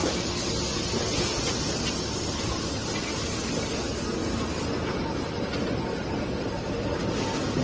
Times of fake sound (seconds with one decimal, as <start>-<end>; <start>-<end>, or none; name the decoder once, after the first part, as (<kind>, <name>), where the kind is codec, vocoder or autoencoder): none